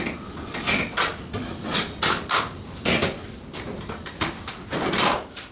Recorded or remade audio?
recorded